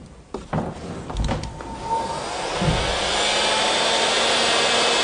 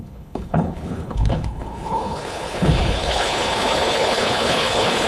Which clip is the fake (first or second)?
second